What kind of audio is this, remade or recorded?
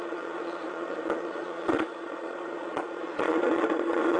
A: remade